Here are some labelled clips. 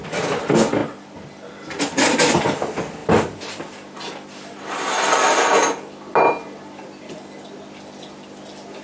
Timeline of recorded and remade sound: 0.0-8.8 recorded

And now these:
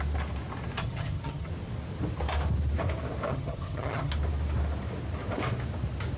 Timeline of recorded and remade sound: 0.0-0.8 recorded; 0.8-1.5 remade; 1.5-3.3 recorded; 3.3-4.1 remade; 4.1-6.2 recorded

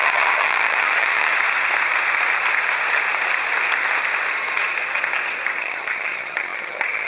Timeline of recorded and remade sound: 0.0-1.3 remade; 1.3-5.6 recorded; 5.6-7.1 remade

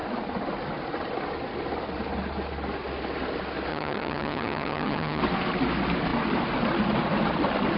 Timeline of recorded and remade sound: 0.0-3.7 recorded; 3.7-5.2 remade; 5.2-7.8 recorded